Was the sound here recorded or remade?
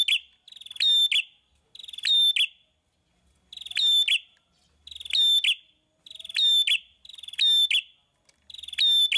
recorded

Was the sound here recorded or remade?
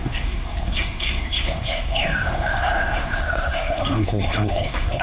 remade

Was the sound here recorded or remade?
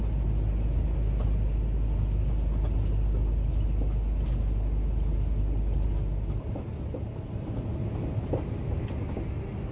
recorded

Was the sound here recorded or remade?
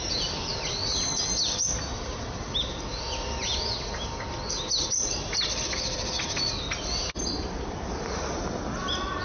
recorded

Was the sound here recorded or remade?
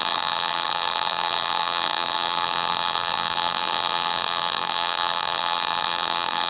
remade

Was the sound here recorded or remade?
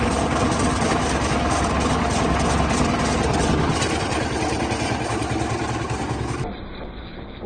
recorded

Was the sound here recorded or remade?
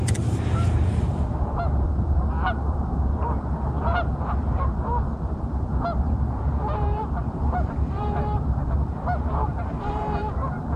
remade